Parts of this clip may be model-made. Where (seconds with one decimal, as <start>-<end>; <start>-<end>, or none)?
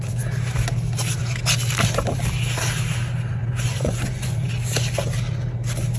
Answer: 3.4-4.5